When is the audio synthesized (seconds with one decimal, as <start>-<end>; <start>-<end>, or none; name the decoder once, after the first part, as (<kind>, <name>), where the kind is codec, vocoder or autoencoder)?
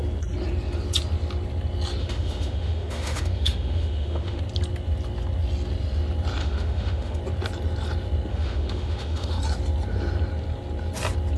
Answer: 2.0-4.4 (autoencoder, DAC-VAE); 6.4-7.2; 8.3-9.4